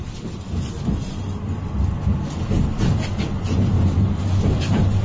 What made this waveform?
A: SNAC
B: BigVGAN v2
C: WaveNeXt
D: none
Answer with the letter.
D